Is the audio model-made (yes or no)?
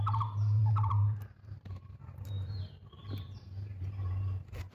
yes